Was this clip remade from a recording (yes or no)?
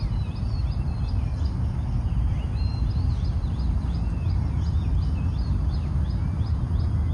no